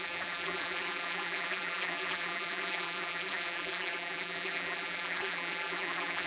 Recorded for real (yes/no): no